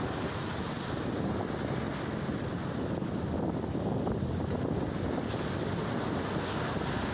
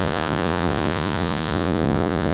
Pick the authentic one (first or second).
first